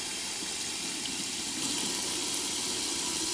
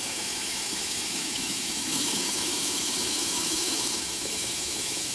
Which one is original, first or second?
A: first